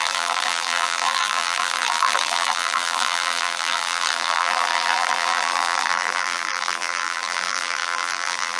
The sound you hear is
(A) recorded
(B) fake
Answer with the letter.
B